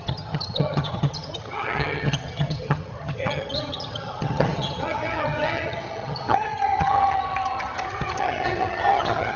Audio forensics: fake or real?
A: fake